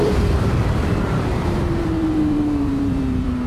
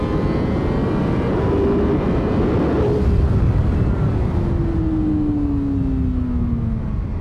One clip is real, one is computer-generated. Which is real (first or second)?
second